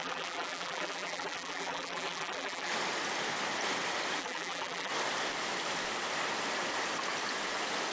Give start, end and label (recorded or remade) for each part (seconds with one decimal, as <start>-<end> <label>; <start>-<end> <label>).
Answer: 0.0-2.7 remade; 2.7-4.2 recorded; 4.2-4.9 remade; 4.9-7.9 recorded